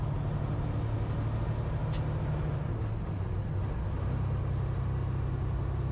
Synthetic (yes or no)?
no